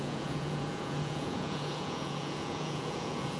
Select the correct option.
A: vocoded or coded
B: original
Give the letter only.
A